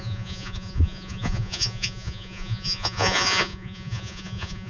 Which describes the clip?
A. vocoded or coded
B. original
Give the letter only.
A